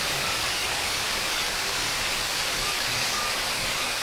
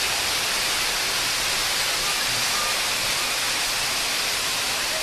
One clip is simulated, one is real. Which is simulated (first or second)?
first